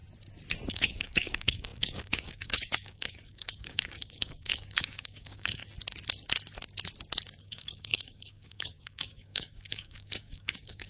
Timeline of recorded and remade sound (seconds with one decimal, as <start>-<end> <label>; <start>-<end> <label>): 0.0-0.7 recorded; 0.7-5.6 remade; 5.6-7.4 recorded; 7.4-10.9 remade